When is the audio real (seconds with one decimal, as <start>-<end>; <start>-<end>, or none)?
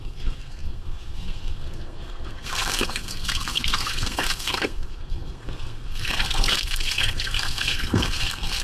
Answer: none